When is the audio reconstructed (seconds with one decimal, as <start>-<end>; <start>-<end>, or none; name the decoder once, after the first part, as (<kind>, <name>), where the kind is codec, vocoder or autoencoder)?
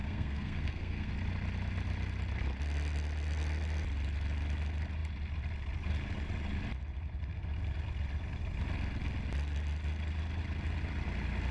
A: 0.0-1.1 (codec, SNAC)